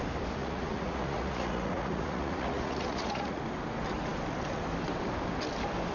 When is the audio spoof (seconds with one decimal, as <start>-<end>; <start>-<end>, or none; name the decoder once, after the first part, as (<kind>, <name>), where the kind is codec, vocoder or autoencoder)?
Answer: 0.4-3.4 (vocoder, Vocos)